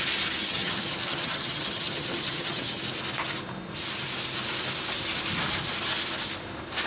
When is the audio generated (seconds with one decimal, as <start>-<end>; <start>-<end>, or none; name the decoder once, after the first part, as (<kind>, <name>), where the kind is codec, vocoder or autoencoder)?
0.4-2.8 (vocoder, HiFi-GAN)